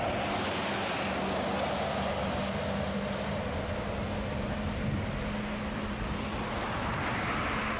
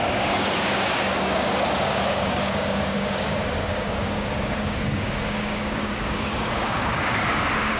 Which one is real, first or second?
first